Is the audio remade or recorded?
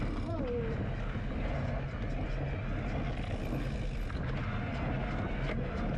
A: recorded